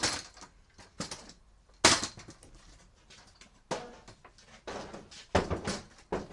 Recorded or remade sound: recorded